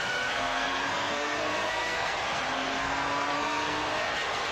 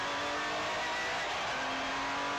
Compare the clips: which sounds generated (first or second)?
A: first